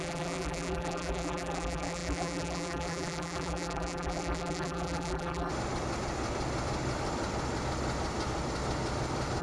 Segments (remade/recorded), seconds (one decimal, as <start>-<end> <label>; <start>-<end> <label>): 0.0-5.5 remade; 5.5-9.4 recorded